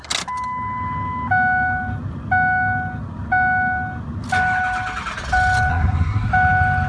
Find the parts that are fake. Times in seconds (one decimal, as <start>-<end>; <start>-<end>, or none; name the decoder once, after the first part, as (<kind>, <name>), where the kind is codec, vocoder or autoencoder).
5.7-6.3 (codec, SNAC)

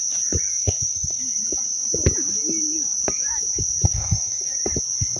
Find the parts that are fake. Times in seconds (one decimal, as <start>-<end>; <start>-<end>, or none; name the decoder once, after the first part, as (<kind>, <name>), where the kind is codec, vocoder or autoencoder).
0.5-1.2 (codec, SNAC); 3.9-4.5

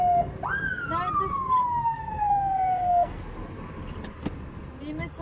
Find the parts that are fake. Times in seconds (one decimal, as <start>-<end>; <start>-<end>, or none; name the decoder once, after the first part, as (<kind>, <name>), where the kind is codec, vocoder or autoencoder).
1.7-3.2 (codec, SNAC)

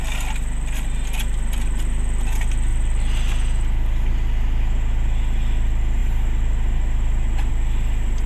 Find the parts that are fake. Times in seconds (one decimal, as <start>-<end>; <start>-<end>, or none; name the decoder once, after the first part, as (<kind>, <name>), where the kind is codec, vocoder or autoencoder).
none

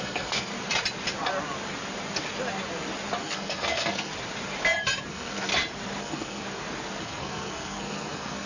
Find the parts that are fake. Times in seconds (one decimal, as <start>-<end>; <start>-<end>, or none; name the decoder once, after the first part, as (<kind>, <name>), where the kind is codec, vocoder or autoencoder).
0.0-0.5 (codec, SNAC); 3.2-4.1; 5.1-5.5; 6.0-6.4; 7.0-8.5

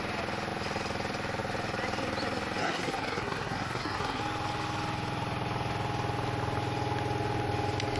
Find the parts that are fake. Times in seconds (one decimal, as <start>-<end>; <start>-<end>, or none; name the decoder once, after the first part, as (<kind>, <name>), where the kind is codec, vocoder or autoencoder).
2.6-4.2 (codec, SNAC)

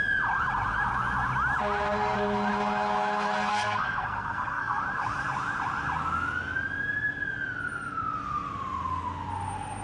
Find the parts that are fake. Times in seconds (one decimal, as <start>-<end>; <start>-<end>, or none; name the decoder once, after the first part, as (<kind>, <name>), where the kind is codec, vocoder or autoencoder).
3.5-4.8 (codec, SNAC)